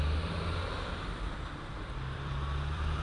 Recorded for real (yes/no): no